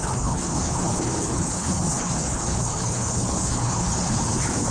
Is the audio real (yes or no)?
no